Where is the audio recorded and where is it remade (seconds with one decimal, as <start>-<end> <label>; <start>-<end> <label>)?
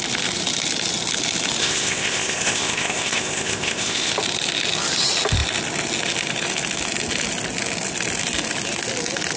0.0-1.6 recorded; 1.6-4.1 remade; 4.1-9.4 recorded